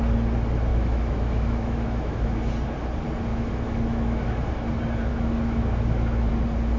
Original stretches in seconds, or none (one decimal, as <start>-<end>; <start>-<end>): 0.0-0.7; 2.5-3.3; 4.4-5.1; 6.3-6.8